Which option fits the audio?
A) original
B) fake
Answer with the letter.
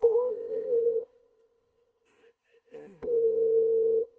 B